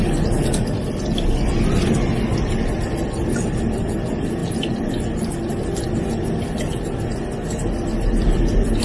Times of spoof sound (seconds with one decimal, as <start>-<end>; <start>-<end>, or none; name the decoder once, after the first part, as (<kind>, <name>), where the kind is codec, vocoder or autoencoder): none